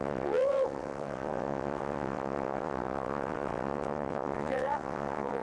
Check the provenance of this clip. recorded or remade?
remade